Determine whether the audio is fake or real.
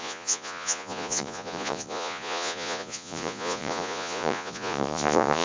fake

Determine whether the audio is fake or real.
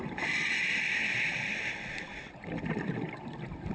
real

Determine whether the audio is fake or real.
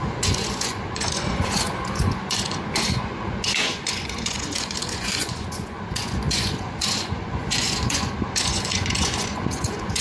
fake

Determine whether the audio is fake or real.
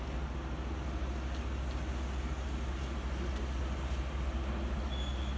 real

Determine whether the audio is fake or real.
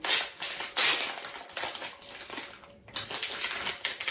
real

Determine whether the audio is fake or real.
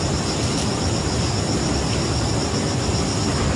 real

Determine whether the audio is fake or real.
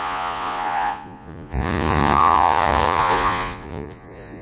fake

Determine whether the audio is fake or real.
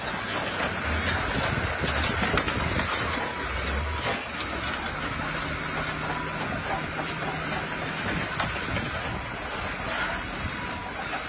real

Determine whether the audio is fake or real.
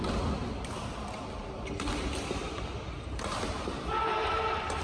real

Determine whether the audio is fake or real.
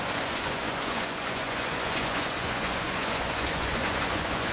fake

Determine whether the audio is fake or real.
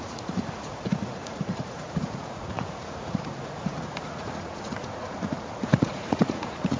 fake